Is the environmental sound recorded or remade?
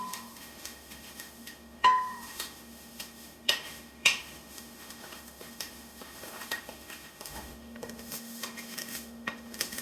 remade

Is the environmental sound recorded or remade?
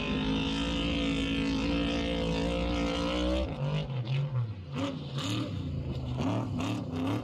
recorded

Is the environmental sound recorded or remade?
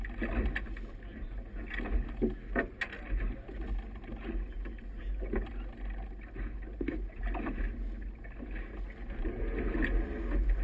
recorded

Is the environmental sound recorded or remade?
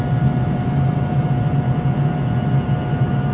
recorded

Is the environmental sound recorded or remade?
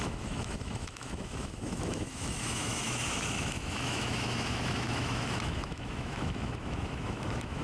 remade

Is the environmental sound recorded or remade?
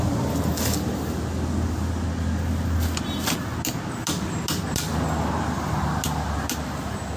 recorded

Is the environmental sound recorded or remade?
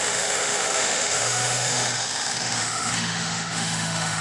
remade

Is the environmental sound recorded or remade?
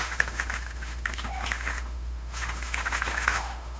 remade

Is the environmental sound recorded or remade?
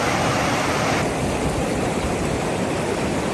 recorded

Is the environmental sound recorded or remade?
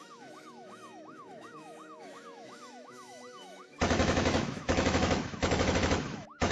remade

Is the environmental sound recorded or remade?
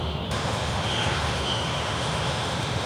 remade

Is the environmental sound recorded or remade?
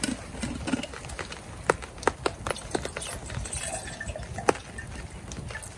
recorded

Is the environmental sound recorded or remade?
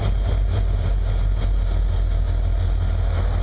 recorded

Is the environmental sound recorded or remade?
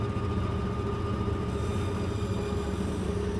recorded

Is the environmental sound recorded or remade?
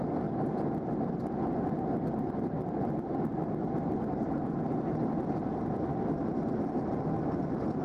recorded